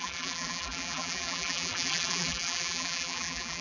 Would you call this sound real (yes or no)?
no